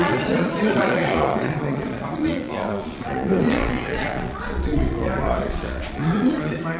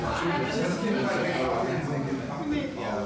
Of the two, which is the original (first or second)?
second